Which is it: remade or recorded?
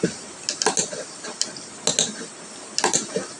recorded